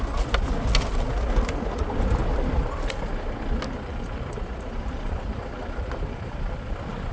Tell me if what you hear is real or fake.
real